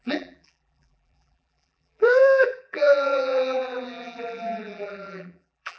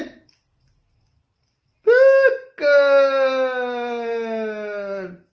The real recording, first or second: second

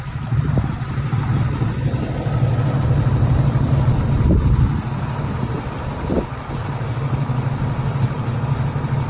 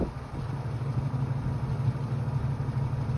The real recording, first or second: second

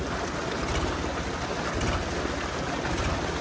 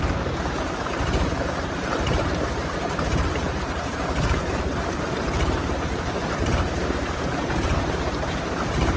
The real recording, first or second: first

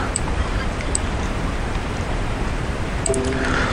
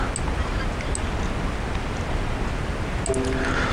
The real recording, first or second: second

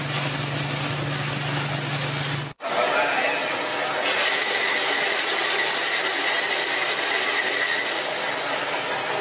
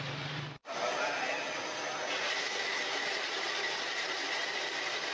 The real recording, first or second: first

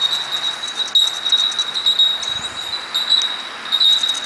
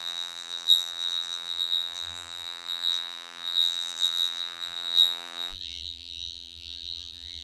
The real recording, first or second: first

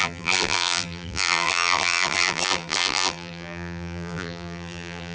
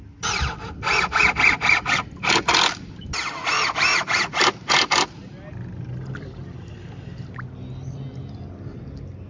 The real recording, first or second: second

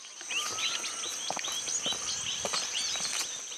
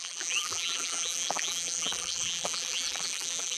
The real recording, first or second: first